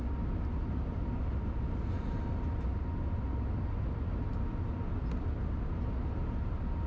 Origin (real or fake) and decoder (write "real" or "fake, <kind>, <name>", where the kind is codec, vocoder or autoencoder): real